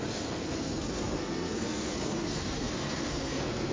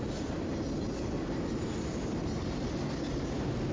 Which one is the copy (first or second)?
first